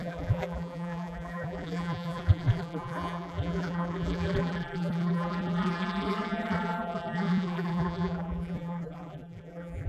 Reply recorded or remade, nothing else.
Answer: remade